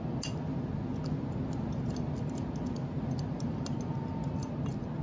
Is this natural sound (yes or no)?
yes